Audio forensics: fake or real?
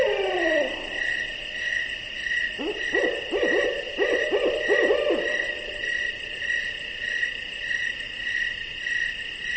real